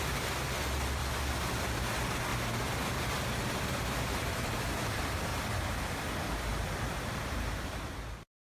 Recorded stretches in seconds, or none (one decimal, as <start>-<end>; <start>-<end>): 1.0-1.6; 2.3-3.1; 5.3-5.8